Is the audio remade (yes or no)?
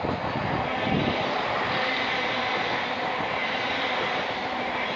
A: no